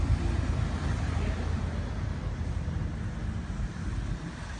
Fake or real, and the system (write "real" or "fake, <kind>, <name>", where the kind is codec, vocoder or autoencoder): real